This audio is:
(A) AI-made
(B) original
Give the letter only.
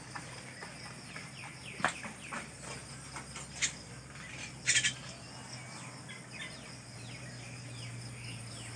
B